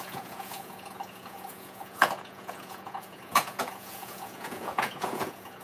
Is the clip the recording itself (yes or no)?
no